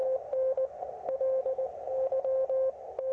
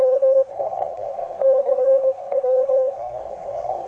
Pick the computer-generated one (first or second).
second